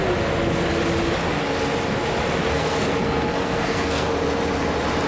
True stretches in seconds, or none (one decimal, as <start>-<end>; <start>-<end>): 0.0-2.5; 4.1-5.1